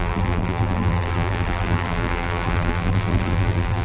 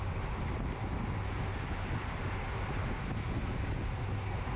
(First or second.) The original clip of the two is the second